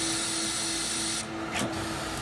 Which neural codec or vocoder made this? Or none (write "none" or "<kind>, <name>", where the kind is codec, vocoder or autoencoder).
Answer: none